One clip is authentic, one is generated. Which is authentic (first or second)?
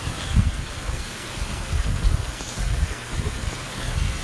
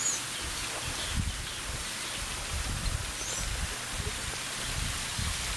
second